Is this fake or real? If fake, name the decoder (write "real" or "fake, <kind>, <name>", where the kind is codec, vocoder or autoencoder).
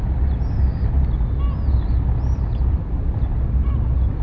real